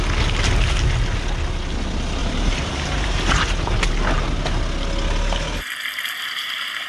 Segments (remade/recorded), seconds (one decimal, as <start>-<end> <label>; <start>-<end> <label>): 0.0-2.2 recorded; 2.2-3.9 remade; 3.9-6.9 recorded